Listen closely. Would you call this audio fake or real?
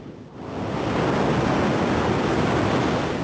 real